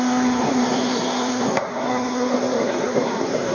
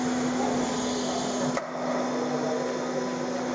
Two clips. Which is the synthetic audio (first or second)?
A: first